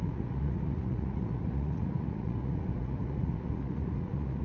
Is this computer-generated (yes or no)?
yes